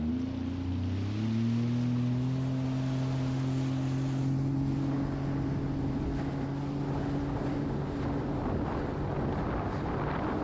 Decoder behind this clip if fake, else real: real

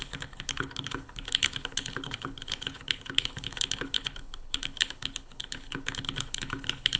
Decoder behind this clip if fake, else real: fake, codec, HILCodec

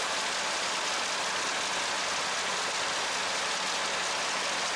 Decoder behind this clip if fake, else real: real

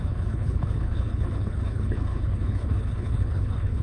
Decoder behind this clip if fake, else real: fake, codec, HILCodec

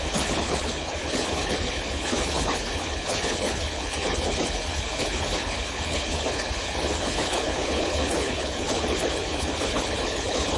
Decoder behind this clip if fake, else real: fake, codec, HILCodec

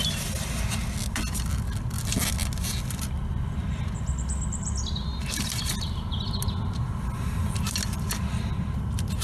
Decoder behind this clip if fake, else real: real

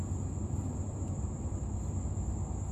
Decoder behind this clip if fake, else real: real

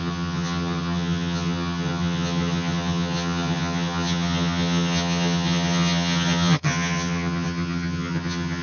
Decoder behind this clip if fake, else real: fake, vocoder, HiFi-GAN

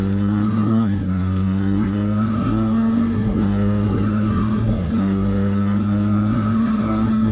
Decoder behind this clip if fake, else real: fake, codec, SNAC